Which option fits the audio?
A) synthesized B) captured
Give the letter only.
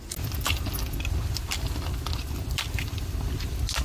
B